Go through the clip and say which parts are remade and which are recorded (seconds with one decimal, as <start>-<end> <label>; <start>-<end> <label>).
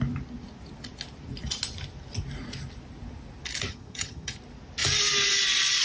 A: 0.0-3.7 recorded; 3.7-4.3 remade; 4.3-5.8 recorded